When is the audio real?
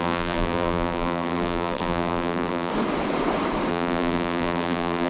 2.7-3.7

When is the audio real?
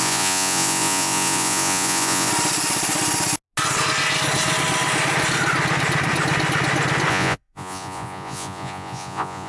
2.3-7.1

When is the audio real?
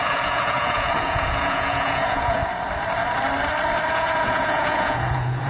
2.4-3.9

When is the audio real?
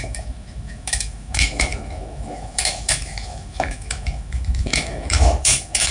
none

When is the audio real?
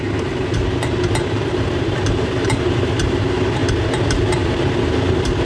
3.6-4.1